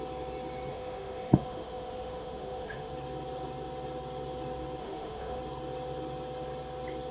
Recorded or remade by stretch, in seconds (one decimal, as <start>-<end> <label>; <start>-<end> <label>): 0.0-0.7 recorded; 0.7-2.9 remade; 2.9-4.8 recorded; 4.8-5.4 remade; 5.4-7.1 recorded